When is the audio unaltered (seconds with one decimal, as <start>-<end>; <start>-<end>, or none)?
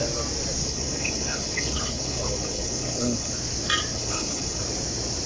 0.0-0.6; 3.3-3.9; 4.6-5.3